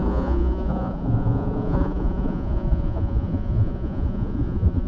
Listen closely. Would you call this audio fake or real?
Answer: fake